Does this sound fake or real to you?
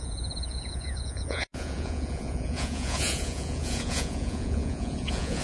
fake